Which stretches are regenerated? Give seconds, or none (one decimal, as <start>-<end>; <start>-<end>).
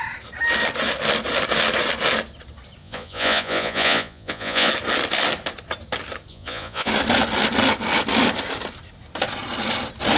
2.8-4.7; 6.3-6.9